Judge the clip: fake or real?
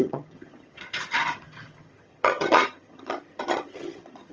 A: fake